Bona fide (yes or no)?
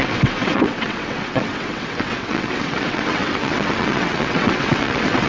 no